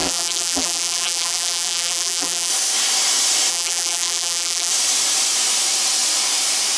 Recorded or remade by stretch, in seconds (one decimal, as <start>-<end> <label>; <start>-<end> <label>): 0.0-2.5 remade; 2.5-3.5 recorded; 3.5-4.7 remade; 4.7-6.8 recorded